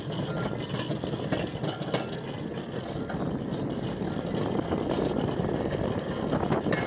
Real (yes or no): yes